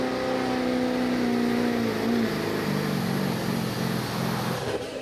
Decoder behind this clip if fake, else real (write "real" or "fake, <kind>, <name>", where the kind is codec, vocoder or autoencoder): real